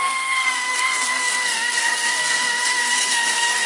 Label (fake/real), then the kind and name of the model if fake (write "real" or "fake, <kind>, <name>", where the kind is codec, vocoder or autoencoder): fake, codec, SNAC